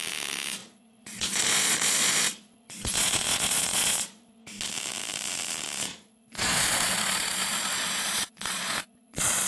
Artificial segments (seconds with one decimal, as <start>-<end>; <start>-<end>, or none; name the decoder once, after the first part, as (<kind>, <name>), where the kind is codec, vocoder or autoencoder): 0.6-4.4 (vocoder, Vocos); 5.9-9.5